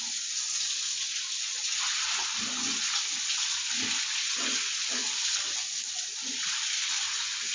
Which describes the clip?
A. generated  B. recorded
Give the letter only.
B